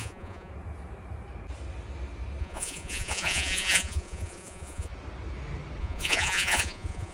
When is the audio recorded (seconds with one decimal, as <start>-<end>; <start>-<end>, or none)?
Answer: 0.5-2.4; 4.9-5.8